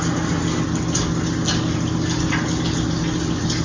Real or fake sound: real